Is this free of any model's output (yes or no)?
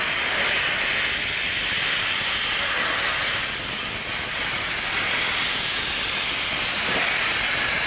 yes